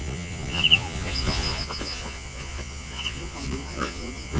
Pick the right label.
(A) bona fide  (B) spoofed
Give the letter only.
B